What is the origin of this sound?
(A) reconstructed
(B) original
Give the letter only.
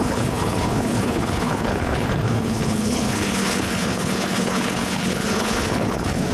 A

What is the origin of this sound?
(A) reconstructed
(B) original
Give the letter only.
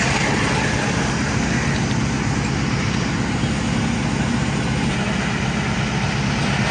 B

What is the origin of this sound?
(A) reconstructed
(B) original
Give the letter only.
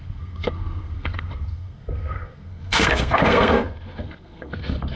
A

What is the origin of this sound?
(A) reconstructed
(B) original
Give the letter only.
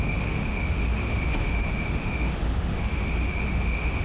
A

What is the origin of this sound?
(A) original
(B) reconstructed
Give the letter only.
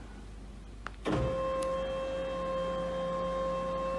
A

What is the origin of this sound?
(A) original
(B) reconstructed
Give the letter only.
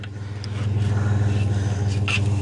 A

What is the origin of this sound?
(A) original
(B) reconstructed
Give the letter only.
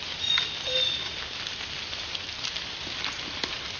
A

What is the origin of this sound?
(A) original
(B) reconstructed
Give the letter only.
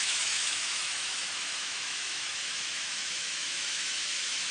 B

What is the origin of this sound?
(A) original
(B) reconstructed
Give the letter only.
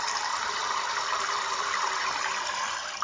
B